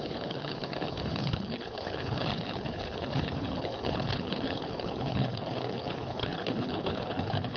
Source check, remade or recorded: remade